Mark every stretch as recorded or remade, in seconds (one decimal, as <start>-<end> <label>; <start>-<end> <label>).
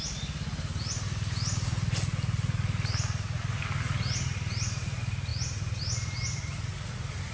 0.0-7.3 recorded